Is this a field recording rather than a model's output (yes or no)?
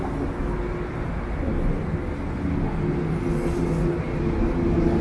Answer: yes